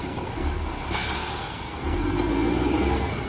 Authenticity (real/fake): fake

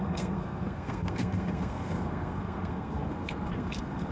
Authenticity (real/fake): fake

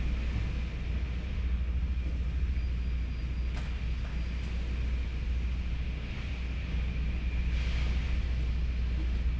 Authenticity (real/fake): real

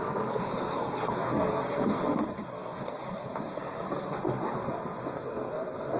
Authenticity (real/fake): fake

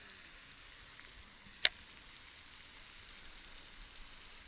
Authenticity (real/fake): real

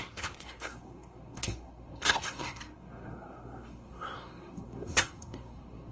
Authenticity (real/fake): fake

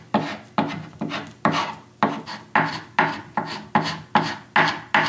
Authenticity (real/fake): real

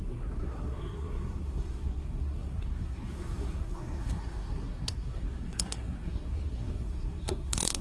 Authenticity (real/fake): fake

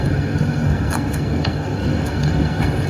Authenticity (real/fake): fake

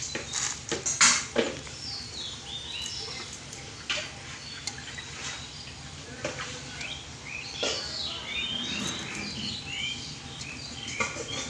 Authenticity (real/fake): real